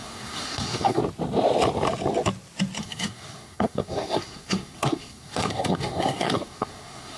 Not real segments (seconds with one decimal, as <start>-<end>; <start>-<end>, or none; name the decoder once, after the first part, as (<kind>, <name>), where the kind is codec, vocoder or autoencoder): 0.0-1.0 (codec, SNAC); 2.8-7.2